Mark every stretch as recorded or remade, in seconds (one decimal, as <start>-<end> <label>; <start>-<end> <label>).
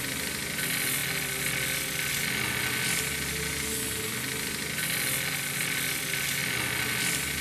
0.0-7.4 recorded